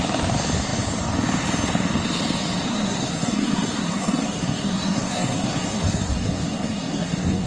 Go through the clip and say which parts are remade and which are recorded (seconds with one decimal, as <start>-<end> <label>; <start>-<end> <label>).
0.0-2.7 recorded; 2.7-7.5 remade